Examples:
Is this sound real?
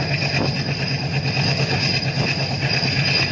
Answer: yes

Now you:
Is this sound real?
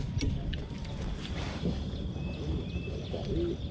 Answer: yes